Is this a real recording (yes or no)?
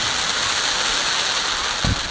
yes